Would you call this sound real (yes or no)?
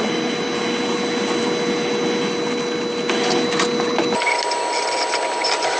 yes